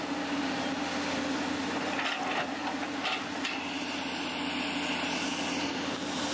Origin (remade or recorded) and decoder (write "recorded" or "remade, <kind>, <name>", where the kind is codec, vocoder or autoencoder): recorded